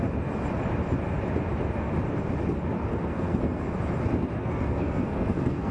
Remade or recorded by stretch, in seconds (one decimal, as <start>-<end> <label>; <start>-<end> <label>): 0.0-2.9 recorded; 2.9-3.6 remade; 3.6-4.4 recorded; 4.4-5.7 remade